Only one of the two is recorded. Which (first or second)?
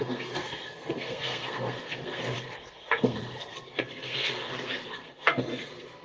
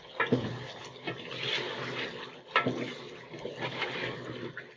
second